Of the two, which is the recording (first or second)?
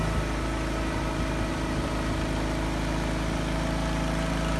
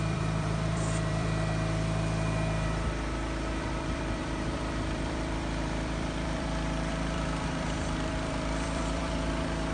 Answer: first